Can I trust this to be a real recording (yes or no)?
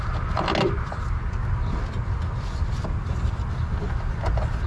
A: yes